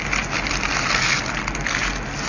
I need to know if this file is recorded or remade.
recorded